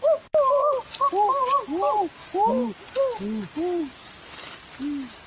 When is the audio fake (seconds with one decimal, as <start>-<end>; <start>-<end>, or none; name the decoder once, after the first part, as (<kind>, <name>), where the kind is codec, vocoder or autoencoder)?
none